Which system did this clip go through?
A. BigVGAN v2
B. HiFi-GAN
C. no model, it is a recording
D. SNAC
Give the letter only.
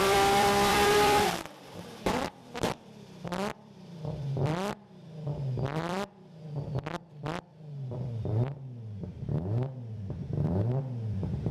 A